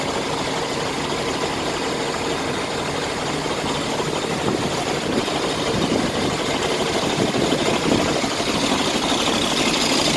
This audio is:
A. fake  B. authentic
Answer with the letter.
B